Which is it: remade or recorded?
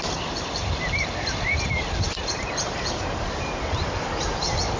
remade